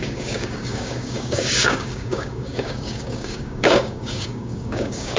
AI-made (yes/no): yes